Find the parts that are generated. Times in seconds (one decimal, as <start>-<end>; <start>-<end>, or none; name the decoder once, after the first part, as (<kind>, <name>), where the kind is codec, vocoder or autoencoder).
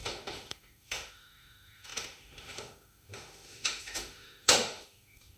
0.0-5.4 (autoencoder, DAC-VAE)